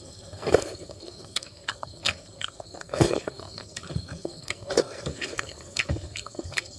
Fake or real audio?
fake